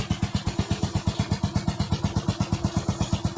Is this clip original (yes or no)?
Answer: yes